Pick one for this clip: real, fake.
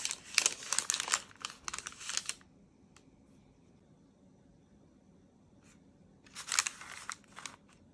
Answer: real